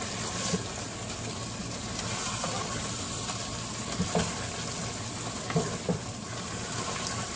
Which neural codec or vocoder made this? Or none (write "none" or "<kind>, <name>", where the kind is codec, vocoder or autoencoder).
none